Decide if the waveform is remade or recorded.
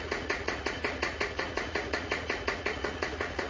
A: remade